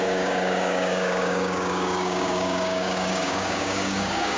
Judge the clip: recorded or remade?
remade